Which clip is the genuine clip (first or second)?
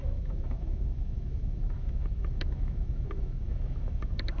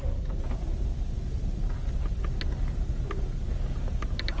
second